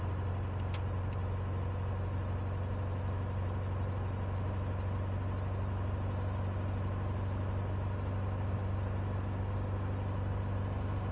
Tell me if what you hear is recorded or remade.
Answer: recorded